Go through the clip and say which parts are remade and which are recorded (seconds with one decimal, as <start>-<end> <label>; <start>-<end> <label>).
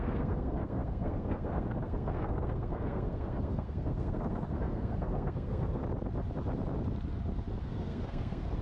0.0-5.8 remade; 5.8-7.6 recorded; 7.6-8.6 remade